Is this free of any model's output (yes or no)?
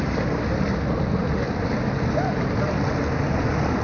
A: yes